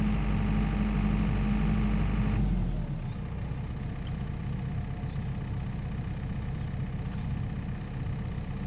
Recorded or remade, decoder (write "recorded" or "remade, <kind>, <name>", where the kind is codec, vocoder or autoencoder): recorded